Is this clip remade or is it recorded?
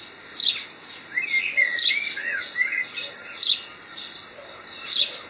recorded